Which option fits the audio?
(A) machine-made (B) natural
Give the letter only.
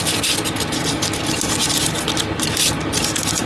B